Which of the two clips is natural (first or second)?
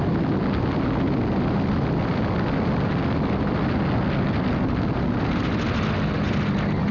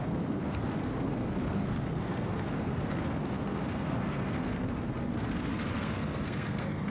first